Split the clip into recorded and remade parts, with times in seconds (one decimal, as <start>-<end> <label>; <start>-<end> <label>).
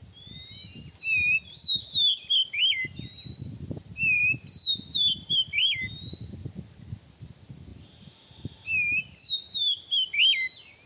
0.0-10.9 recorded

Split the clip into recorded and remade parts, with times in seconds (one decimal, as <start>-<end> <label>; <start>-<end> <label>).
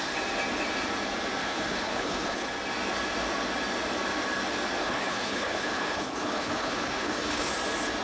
0.0-1.4 recorded; 1.4-2.5 remade; 2.5-4.8 recorded; 4.8-7.5 remade; 7.5-8.0 recorded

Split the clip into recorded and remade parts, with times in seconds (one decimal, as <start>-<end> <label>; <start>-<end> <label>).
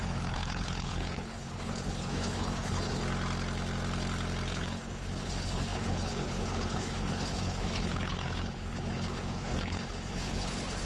0.0-3.0 remade; 3.0-4.5 recorded; 4.5-10.9 remade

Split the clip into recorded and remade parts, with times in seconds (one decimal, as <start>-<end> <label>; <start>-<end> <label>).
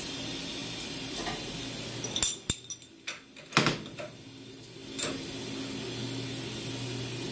0.0-7.3 recorded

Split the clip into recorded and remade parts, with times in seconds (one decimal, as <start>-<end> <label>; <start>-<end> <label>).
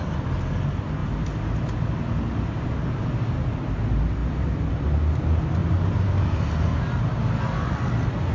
0.0-8.3 recorded